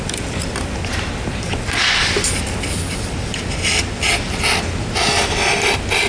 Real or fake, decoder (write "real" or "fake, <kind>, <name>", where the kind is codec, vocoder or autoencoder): real